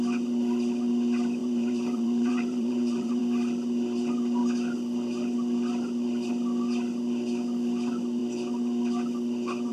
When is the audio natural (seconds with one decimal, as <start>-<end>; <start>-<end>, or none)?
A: 0.0-1.4; 3.2-9.7